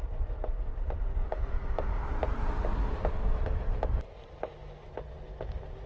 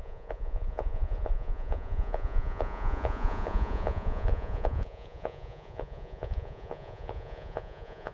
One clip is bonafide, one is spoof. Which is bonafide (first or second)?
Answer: first